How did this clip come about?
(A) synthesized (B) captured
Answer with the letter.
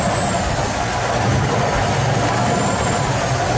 B